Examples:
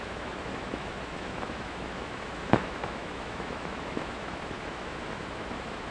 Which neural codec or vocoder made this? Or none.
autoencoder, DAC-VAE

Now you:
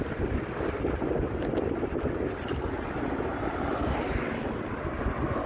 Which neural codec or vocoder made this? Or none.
none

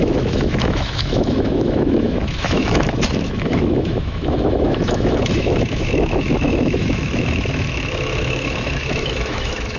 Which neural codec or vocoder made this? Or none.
autoencoder, DAC-VAE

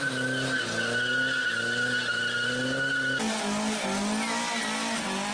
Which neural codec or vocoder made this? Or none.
none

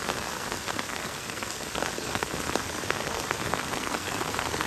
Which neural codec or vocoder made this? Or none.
codec, SNAC